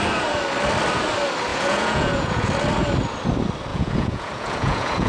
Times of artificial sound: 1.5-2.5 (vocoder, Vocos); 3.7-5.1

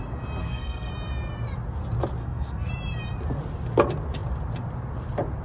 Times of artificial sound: 0.4-0.9 (codec, SNAC); 2.2-2.7

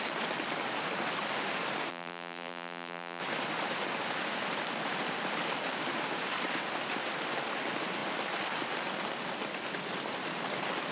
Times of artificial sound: 1.9-3.2 (vocoder, BigVGAN v2)

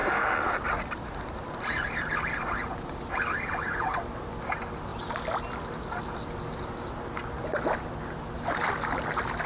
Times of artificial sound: none

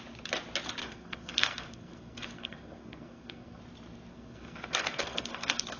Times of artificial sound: 0.8-3.6 (codec, SNAC); 4.1-5.8

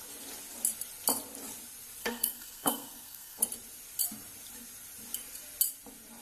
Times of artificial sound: 2.0-3.4 (codec, SNAC)